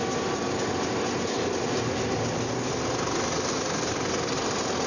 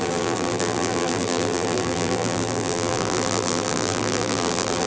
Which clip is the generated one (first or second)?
second